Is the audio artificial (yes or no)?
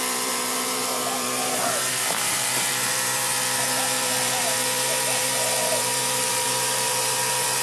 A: yes